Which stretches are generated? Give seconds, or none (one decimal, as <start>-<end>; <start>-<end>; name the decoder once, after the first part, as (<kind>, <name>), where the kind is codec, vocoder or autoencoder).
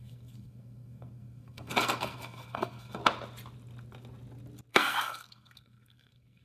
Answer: 0.0-3.0 (codec, SNAC); 4.7-6.4